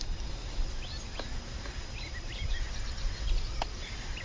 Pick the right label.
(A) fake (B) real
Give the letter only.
B